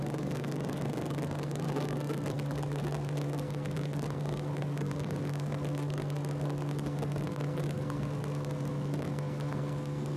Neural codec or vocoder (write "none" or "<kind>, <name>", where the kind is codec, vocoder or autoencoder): codec, SNAC